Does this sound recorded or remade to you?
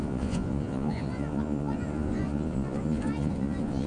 remade